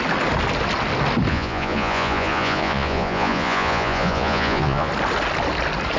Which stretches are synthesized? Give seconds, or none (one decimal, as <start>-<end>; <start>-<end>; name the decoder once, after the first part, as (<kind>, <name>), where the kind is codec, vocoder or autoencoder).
1.3-4.9 (vocoder, Vocos)